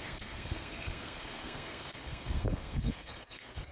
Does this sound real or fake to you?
fake